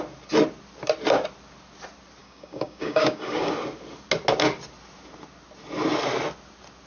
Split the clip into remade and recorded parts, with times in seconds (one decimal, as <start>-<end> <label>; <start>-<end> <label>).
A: 0.0-2.2 recorded; 2.2-3.5 remade; 3.5-6.9 recorded